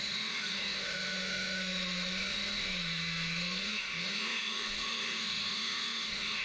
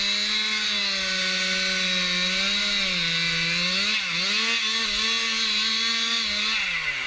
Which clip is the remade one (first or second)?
first